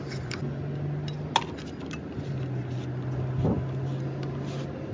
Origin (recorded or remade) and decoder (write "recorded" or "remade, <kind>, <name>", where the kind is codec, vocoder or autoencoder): recorded